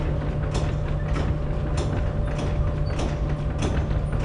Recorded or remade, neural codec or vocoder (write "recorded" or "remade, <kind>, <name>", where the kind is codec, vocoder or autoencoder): recorded